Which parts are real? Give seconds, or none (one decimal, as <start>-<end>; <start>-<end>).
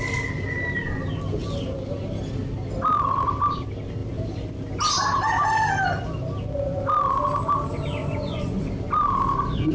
0.0-8.0; 8.6-9.7